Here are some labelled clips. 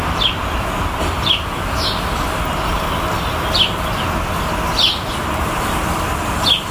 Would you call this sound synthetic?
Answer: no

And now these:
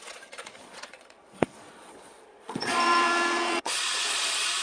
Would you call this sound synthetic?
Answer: yes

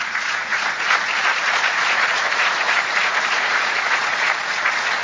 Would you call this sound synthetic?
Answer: yes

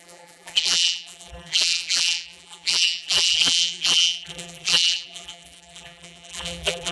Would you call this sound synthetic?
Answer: yes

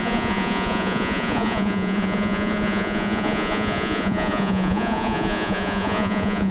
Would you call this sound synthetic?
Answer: yes